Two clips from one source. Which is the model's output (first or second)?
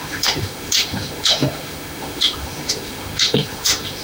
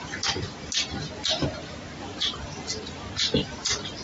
first